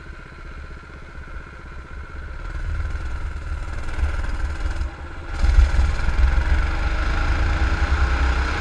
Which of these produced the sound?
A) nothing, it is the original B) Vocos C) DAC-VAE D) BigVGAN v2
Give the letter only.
A